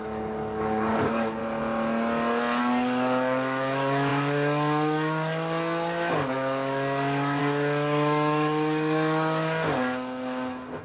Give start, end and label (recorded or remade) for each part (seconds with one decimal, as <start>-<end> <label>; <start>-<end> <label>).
0.0-1.4 remade; 1.4-2.6 recorded; 2.6-10.8 remade